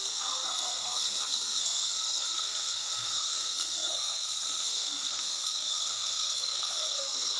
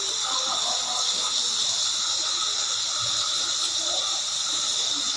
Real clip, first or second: second